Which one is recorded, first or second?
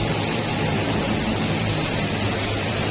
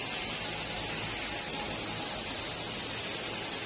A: second